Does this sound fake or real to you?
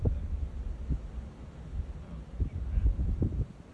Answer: fake